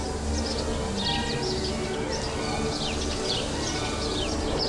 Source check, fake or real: real